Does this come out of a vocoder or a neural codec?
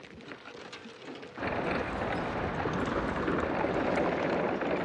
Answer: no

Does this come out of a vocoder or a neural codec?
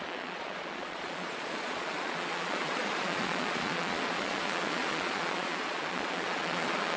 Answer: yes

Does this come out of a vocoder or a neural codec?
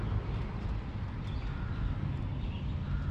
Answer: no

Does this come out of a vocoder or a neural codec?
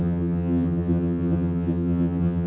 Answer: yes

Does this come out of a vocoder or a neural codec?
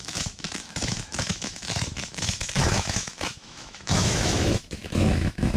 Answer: yes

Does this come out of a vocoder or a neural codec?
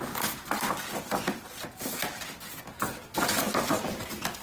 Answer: no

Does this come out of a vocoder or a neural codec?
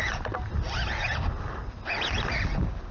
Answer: no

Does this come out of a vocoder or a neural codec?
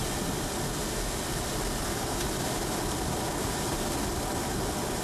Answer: no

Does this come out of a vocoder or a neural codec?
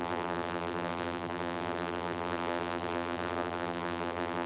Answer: yes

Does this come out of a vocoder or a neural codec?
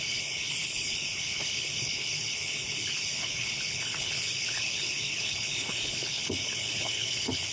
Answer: yes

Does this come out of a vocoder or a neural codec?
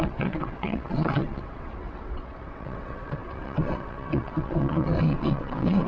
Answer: yes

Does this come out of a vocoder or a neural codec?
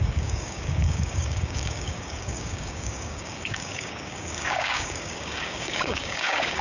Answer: yes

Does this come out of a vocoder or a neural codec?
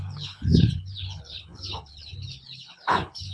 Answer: yes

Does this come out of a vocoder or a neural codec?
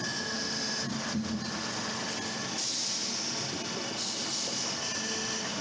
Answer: no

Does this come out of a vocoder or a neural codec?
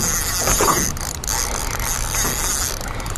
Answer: no